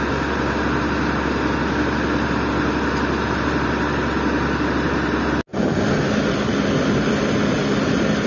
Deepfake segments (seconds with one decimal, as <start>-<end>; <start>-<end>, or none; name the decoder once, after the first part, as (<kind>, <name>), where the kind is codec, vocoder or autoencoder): none